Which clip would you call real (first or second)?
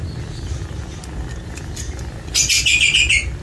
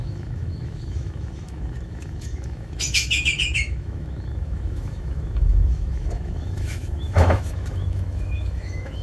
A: first